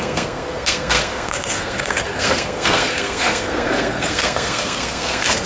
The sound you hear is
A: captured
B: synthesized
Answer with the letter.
B